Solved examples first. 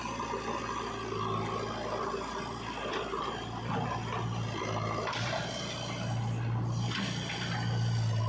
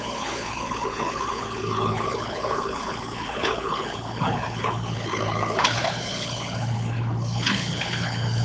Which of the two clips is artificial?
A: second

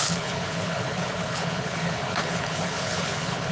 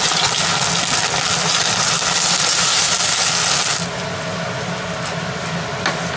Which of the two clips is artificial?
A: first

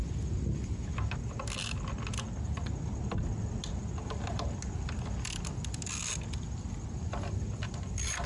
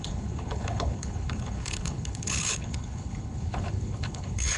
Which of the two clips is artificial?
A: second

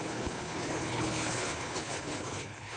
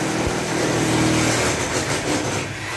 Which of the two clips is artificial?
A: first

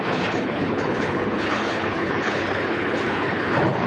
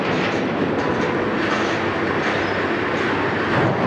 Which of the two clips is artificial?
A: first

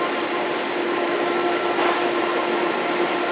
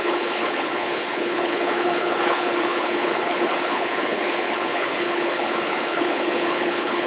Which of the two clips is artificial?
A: second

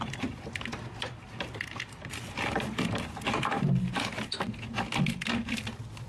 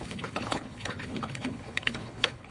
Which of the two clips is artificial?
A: second